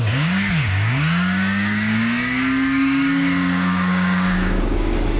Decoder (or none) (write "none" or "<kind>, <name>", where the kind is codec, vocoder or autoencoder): codec, DAC